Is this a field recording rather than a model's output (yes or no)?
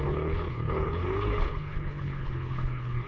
no